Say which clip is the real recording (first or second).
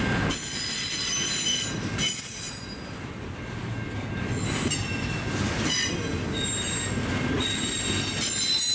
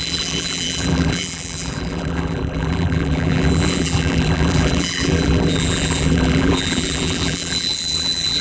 first